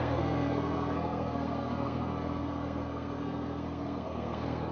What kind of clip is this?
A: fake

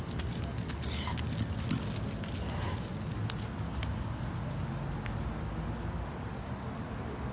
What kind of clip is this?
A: real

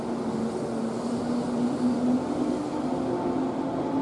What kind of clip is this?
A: real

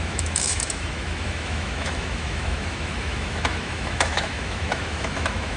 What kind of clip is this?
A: fake